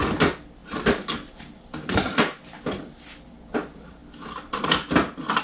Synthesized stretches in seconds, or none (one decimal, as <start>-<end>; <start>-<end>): none